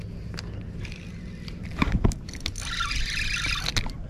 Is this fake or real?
real